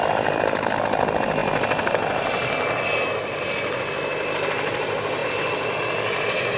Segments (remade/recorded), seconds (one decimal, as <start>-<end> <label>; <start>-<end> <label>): 0.0-6.6 recorded